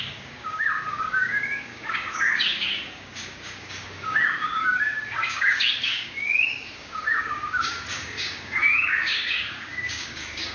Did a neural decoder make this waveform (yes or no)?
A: yes